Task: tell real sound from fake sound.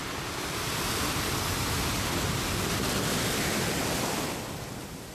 real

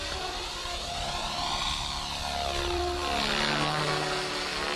real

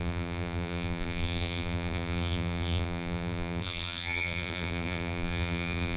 fake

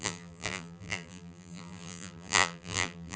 fake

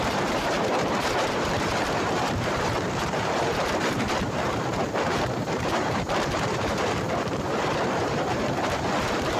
fake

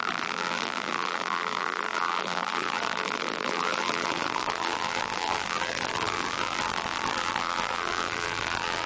fake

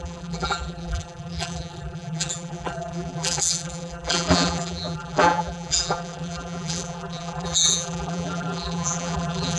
fake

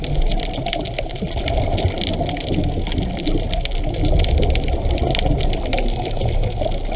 real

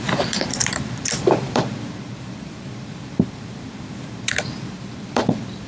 fake